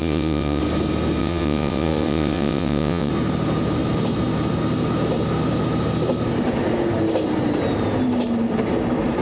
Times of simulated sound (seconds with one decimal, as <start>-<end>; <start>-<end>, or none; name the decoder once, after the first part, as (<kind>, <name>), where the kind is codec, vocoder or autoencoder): 0.0-0.6 (vocoder, WaveNeXt); 1.2-3.1